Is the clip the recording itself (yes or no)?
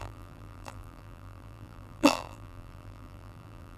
no